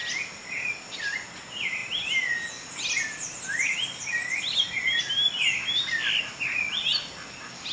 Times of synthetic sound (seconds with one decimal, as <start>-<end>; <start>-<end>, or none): none